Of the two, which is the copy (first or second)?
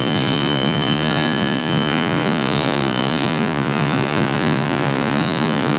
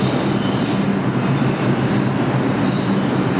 first